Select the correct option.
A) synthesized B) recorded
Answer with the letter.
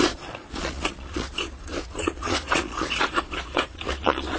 A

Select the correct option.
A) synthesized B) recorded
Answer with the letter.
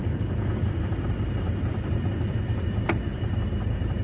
B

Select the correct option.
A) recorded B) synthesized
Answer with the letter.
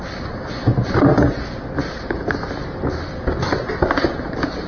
A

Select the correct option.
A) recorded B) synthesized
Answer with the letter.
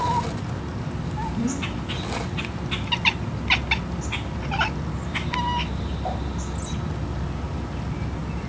A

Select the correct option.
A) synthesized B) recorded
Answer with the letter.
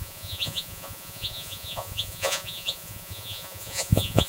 A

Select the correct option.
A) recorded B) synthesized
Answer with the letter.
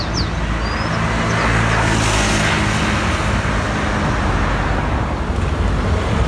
A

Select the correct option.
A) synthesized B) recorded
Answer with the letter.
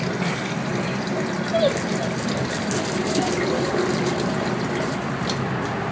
B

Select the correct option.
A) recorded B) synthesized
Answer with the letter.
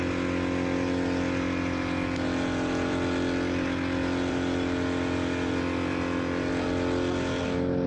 A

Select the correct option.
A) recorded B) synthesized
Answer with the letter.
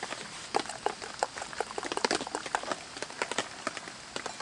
A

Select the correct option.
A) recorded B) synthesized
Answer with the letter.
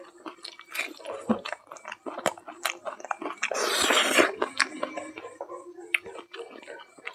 A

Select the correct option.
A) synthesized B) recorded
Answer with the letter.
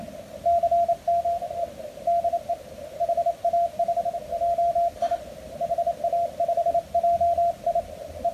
B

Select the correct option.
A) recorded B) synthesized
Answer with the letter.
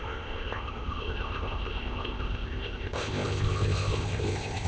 B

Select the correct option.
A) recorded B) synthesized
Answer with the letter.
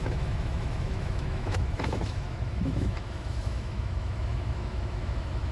B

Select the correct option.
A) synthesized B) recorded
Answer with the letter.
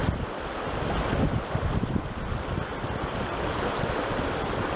B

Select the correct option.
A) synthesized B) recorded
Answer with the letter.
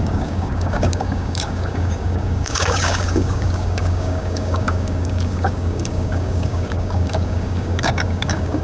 A